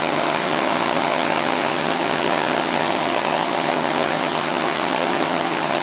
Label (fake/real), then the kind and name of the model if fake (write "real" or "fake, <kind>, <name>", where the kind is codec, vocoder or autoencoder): fake, vocoder, HiFi-GAN